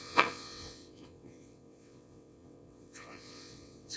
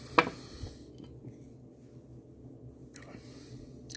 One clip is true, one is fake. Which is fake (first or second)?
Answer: first